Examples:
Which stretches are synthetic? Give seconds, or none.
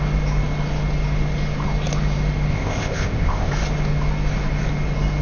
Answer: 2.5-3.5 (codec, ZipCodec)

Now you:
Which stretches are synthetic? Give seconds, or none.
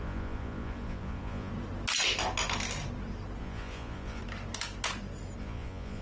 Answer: 0.0-1.5 (vocoder, Vocos); 3.4-4.2; 5.4-6.0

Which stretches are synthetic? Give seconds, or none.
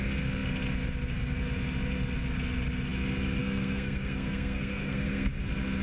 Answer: 3.4-5.3 (codec, SNAC)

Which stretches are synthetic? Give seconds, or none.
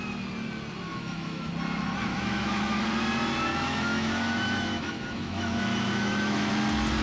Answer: 0.9-1.5 (autoencoder, DAC-VAE); 2.1-2.8; 3.5-6.5